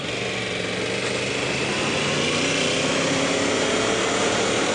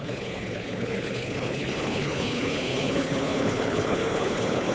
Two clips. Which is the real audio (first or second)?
first